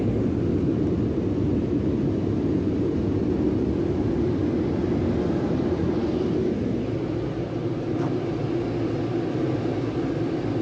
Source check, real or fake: real